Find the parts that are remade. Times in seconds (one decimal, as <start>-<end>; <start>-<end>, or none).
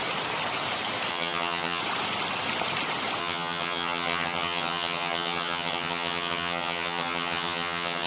1.1-1.8; 3.2-8.1